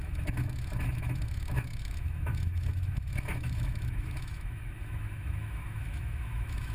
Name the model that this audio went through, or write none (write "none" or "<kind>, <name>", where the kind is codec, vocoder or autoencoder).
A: autoencoder, DAC-VAE